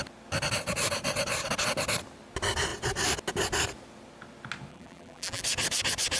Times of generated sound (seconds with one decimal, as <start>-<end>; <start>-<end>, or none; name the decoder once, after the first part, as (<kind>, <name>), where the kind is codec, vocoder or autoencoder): 4.7-5.4 (vocoder, BigVGAN v2)